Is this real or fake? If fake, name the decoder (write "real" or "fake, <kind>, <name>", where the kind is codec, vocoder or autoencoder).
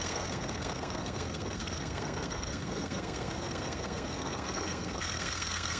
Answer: fake, codec, SNAC